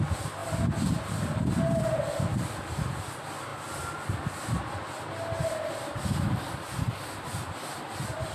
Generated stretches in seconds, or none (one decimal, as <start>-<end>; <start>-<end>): 2.3-3.1